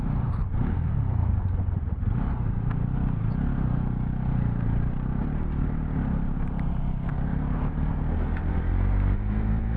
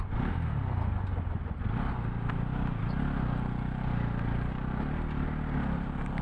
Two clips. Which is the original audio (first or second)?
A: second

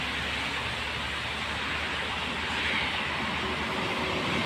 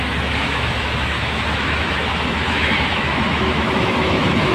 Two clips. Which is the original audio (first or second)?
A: first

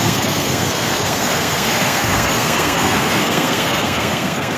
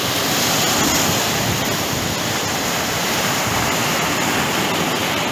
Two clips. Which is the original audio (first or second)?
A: second